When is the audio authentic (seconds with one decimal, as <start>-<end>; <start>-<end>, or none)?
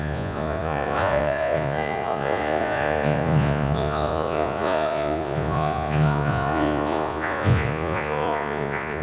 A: none